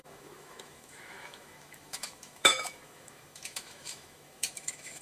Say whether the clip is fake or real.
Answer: fake